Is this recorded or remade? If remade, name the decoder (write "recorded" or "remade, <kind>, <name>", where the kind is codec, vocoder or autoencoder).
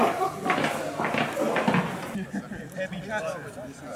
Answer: recorded